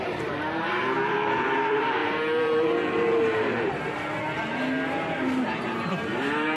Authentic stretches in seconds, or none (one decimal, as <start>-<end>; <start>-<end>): none